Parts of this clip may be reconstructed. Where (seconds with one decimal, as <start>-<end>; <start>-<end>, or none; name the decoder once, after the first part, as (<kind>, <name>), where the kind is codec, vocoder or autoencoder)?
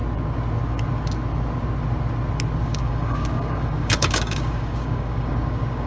2.6-5.9 (codec, DAC)